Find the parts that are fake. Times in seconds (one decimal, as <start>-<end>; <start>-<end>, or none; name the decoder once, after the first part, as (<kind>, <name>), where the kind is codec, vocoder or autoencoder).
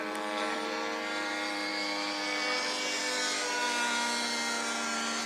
none